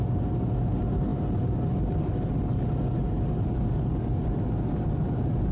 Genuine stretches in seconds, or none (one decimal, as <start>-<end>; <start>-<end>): 0.0-5.5